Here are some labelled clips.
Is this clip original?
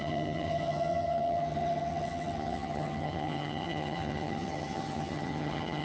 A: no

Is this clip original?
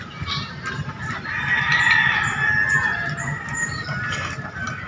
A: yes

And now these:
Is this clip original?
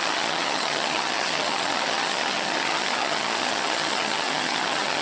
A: no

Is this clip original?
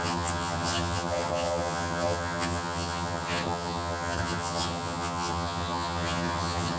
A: no